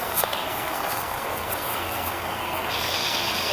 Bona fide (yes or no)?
no